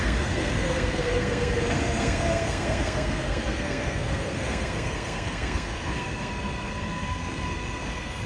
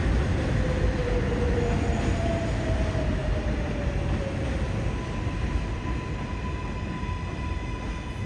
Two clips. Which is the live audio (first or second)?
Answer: second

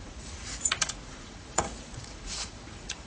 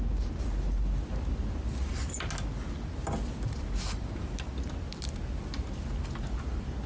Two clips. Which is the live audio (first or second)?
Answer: second